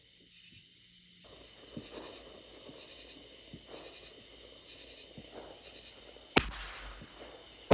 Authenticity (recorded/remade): recorded